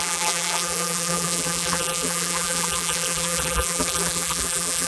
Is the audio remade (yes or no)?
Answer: yes